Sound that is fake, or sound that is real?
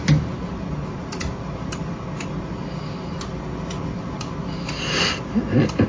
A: real